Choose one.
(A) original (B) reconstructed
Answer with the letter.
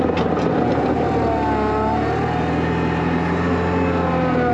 A